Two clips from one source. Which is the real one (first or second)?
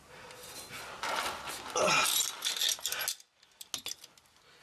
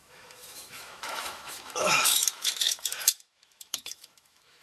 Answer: first